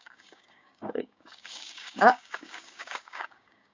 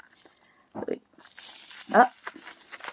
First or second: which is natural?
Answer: second